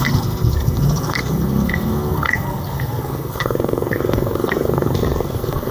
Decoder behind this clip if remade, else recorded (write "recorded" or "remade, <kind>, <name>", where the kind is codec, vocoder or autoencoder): remade, codec, SNAC